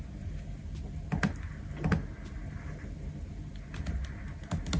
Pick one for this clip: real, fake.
real